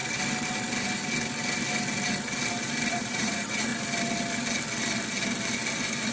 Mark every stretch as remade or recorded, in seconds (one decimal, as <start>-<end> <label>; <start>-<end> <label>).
0.0-2.9 recorded; 2.9-3.7 remade; 3.7-6.1 recorded